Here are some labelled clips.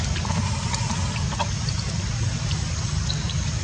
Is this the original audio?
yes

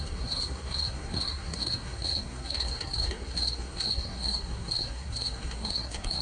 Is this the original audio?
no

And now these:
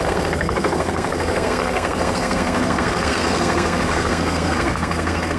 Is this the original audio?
no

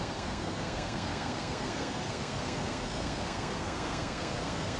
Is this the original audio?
no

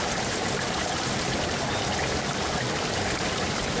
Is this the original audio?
yes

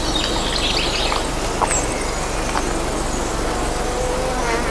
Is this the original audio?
yes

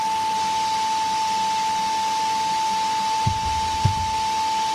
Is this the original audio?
yes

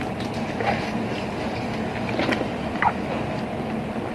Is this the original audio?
yes